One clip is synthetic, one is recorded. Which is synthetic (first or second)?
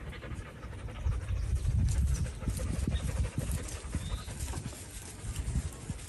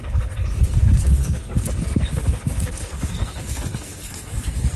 second